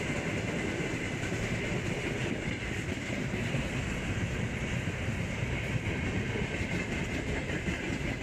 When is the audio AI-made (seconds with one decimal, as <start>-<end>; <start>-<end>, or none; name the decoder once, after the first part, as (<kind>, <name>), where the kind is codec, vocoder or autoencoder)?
2.2-3.5 (vocoder, BigVGAN v2)